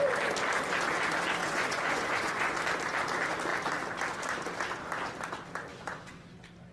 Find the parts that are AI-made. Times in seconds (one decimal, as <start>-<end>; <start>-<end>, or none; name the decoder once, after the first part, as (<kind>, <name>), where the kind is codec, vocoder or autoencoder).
1.4-2.6 (vocoder, Vocos); 5.7-6.3

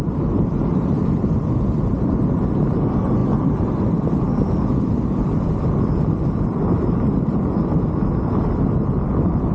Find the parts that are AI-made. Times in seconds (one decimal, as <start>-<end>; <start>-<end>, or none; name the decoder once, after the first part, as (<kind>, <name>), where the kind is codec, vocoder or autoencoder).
none

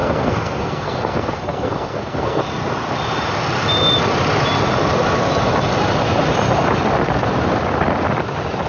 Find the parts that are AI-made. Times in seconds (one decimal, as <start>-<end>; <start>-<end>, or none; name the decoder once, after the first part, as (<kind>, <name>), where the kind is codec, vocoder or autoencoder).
0.0-2.4 (codec, SNAC)

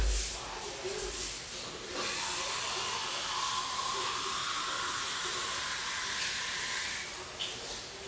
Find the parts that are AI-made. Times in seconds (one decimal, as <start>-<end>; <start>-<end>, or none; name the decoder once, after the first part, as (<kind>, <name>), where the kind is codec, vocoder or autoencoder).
none

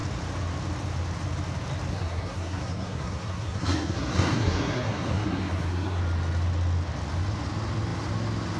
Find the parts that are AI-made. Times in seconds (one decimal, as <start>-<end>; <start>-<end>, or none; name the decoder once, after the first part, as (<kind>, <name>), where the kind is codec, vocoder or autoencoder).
1.9-6.0 (codec, SNAC)

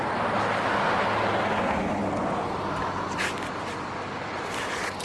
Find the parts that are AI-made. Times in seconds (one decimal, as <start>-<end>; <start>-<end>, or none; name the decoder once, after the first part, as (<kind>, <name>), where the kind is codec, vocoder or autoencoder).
none

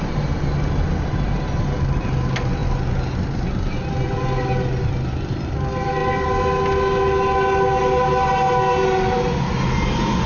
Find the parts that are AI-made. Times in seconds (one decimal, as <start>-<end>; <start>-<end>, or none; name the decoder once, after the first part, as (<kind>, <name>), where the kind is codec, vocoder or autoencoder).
none